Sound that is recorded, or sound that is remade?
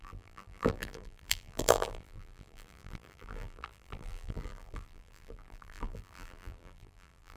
remade